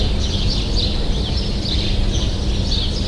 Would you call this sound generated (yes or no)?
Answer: no